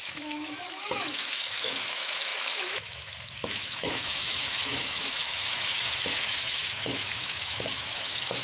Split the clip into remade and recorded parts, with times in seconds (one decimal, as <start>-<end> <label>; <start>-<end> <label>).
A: 0.0-8.4 remade